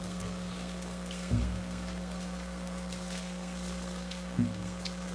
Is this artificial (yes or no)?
yes